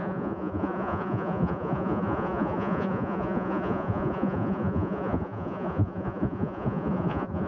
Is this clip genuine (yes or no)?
no